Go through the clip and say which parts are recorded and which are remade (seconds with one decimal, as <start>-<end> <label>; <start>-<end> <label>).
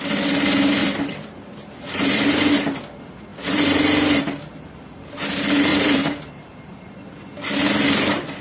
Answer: 0.0-0.8 recorded; 0.8-2.8 remade; 2.8-5.7 recorded; 5.7-6.8 remade; 6.8-8.4 recorded